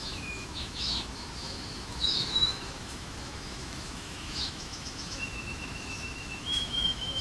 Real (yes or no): no